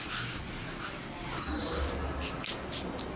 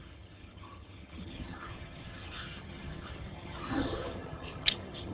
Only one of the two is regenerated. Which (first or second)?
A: second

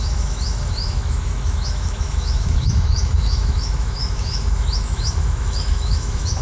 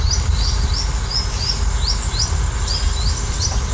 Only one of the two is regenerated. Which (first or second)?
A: first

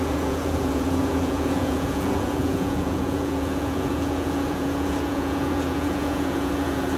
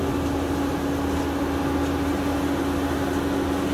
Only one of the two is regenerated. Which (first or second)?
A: first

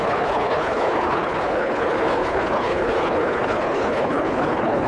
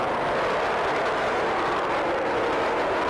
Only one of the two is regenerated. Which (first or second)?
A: first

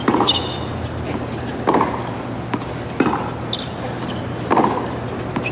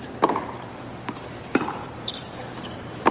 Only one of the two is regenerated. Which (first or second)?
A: second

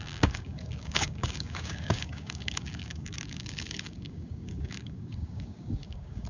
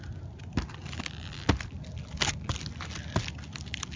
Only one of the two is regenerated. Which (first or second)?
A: first